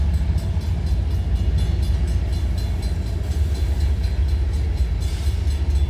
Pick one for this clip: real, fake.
real